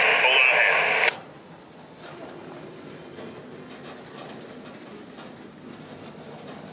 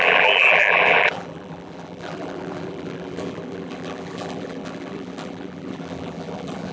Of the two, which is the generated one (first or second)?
second